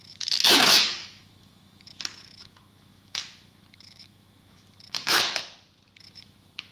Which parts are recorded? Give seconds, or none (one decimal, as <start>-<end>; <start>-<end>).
5.4-6.0